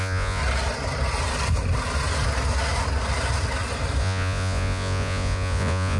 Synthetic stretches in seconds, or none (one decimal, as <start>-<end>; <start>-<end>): 0.0-0.4; 4.0-6.0